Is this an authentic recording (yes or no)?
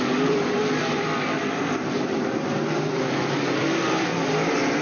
no